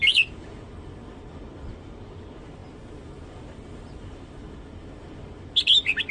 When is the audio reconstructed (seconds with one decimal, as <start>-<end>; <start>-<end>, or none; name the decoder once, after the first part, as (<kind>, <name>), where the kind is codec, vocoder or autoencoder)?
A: none